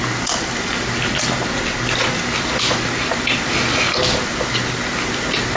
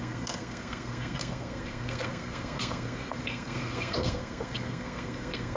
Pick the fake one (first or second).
second